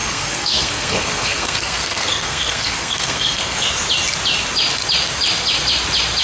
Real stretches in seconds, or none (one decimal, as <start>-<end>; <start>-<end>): 3.7-6.2